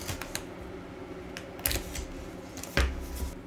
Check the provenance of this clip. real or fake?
real